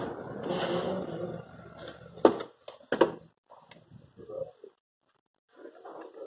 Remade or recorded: recorded